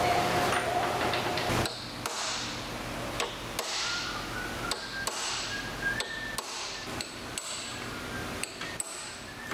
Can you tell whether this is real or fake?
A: real